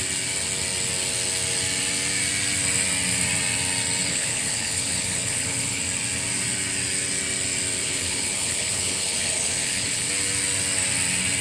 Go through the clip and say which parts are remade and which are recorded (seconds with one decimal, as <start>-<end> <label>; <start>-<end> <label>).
0.0-4.1 recorded; 4.1-5.8 remade; 5.8-7.8 recorded; 7.8-10.1 remade; 10.1-11.4 recorded